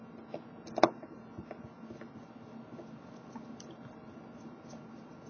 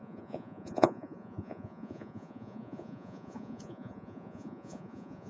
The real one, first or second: first